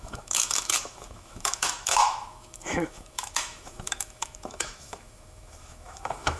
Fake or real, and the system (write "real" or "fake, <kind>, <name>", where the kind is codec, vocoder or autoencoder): fake, autoencoder, DAC-VAE